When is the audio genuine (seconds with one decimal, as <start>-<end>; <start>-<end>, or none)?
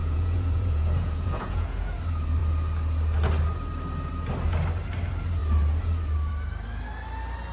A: 1.8-7.5